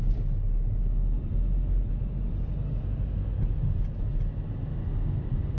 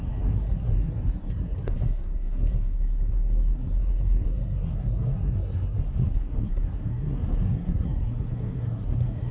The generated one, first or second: second